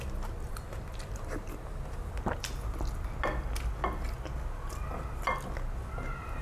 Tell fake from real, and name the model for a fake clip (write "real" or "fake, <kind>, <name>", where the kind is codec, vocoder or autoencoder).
real